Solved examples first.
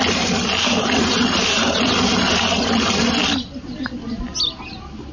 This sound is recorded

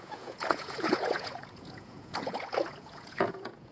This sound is remade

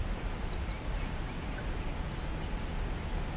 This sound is recorded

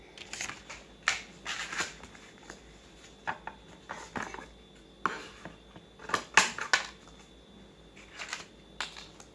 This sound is recorded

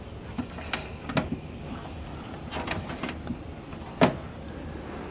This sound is recorded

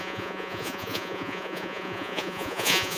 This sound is remade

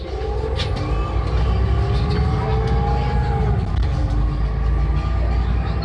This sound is recorded